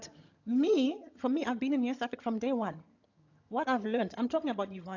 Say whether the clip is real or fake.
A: fake